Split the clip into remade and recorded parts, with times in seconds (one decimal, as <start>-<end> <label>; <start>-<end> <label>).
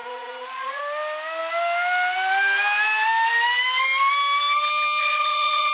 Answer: 0.0-0.8 remade; 0.8-5.0 recorded; 5.0-5.7 remade